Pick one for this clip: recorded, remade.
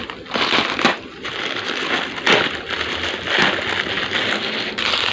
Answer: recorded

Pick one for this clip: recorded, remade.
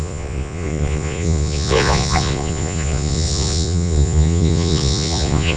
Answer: remade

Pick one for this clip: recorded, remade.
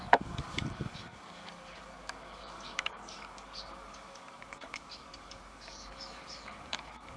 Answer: remade